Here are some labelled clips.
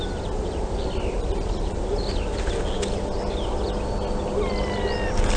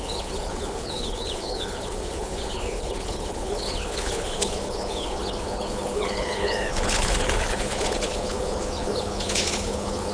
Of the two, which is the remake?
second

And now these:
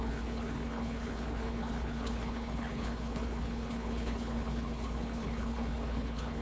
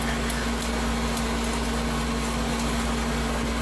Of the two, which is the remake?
first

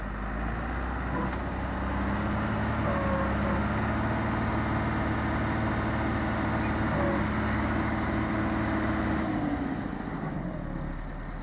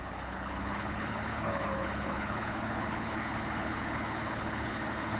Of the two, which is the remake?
second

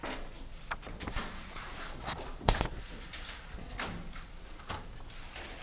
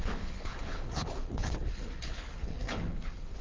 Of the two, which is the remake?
second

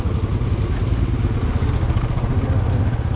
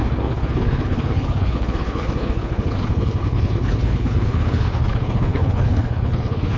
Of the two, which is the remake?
second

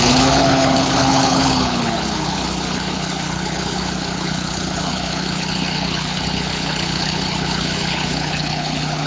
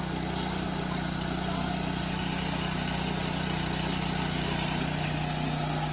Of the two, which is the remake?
first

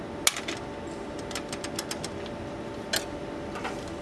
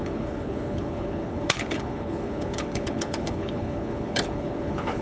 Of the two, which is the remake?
second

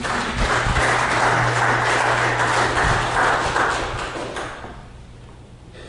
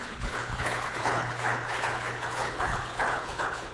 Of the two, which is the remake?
second